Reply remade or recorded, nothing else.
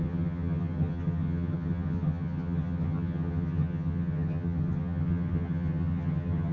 remade